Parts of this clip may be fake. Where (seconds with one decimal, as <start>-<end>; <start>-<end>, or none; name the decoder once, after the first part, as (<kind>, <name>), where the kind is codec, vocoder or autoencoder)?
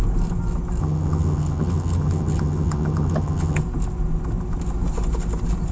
0.8-3.6 (vocoder, HiFi-GAN)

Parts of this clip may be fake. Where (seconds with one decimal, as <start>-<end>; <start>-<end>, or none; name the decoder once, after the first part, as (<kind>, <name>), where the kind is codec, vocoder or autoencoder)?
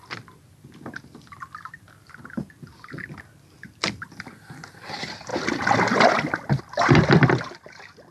none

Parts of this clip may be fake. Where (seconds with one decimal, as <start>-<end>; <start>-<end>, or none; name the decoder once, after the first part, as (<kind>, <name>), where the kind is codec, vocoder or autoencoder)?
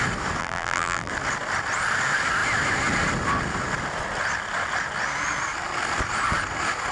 0.4-1.1 (vocoder, BigVGAN v2)